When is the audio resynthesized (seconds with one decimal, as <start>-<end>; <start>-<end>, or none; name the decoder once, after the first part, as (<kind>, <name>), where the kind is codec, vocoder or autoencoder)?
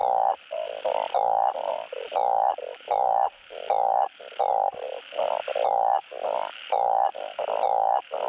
none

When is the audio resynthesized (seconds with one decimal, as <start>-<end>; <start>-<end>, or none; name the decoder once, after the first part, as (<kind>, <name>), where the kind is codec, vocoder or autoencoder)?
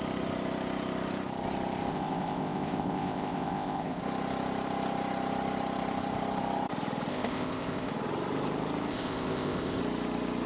1.9-4.0 (codec, ZipCodec); 7.1-7.9; 8.9-9.8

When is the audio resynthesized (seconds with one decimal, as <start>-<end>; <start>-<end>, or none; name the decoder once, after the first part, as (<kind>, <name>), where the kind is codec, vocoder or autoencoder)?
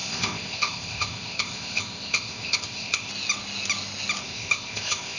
0.0-3.1 (codec, ZipCodec); 4.2-5.2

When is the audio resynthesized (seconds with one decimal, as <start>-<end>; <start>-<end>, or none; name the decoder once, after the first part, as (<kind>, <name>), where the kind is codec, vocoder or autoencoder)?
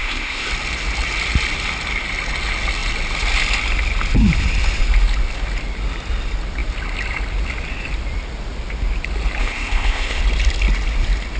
0.0-0.5 (codec, ZipCodec); 9.4-10.2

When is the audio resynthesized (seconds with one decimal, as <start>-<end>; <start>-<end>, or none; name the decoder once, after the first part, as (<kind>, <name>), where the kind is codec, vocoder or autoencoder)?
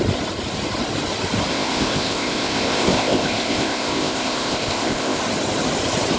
1.5-5.2 (codec, ZipCodec)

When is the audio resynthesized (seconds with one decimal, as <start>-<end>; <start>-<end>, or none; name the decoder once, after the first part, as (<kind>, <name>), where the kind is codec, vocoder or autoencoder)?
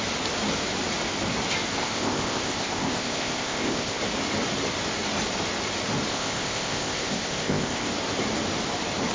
1.8-4.0 (codec, ZipCodec); 6.1-7.9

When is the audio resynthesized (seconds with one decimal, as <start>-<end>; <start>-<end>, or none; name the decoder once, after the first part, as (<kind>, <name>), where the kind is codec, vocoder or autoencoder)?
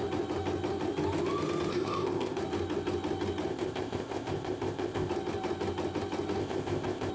1.7-2.4 (codec, ZipCodec); 3.5-5.1; 6.4-7.1